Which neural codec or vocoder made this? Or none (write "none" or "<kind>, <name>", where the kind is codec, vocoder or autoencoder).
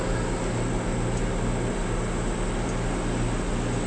none